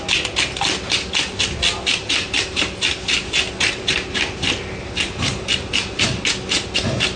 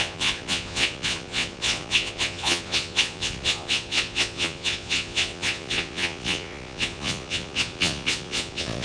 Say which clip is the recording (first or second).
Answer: first